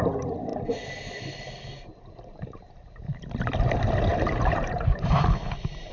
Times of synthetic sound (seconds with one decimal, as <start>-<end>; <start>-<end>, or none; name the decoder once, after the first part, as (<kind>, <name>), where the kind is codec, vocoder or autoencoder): 4.1-5.9 (vocoder, BigVGAN v2)